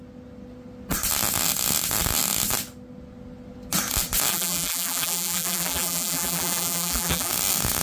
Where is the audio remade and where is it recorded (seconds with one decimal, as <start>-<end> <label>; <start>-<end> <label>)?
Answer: 0.0-4.3 recorded; 4.3-7.3 remade; 7.3-7.8 recorded